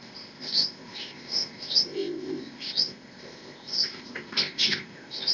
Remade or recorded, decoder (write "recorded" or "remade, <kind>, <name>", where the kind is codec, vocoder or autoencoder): remade, codec, ZipCodec